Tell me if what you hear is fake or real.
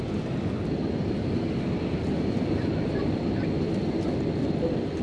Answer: real